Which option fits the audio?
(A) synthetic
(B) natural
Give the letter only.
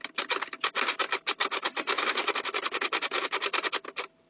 B